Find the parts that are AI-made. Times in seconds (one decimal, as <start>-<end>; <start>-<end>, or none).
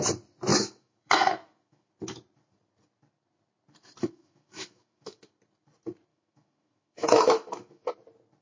0.5-1.9; 4.0-5.3; 6.1-7.9